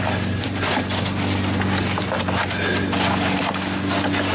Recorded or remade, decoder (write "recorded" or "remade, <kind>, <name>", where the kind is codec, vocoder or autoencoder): recorded